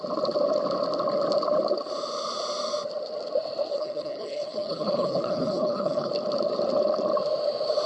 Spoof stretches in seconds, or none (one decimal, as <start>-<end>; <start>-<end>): 3.7-6.1